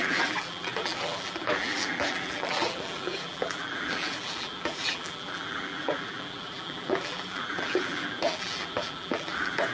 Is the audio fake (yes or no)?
yes